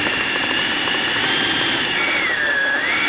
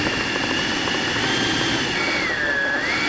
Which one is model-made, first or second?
first